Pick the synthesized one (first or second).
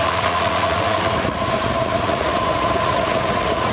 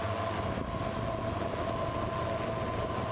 first